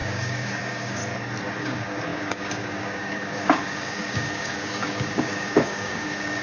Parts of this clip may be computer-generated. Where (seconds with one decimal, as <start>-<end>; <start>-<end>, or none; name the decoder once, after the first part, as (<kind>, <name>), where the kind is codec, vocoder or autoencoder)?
0.0-1.0 (codec, DAC); 1.6-6.4